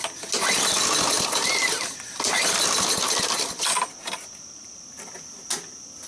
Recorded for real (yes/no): yes